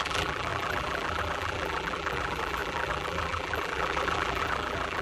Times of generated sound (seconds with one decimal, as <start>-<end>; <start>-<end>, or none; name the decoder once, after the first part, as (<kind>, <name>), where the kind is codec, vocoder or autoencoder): 0.0-5.0 (vocoder, BigVGAN v2)